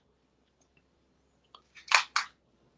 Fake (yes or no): no